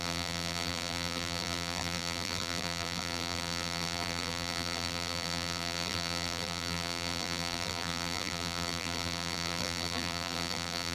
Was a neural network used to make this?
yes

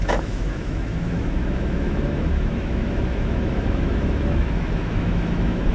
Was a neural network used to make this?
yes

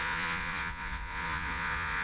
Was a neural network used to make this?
yes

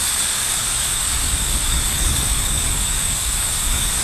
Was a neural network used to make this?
yes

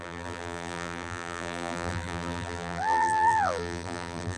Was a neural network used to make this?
yes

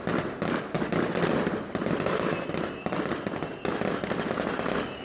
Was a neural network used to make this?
no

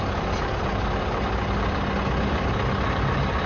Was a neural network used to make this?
no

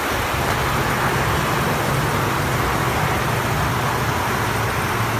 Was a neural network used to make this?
no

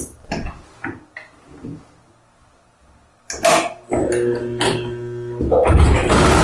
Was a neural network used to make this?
no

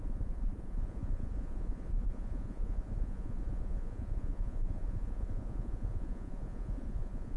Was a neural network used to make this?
yes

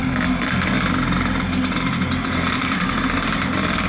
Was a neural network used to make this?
no